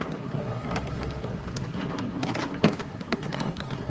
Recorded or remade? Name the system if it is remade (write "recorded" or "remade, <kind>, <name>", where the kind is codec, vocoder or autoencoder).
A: remade, codec, SNAC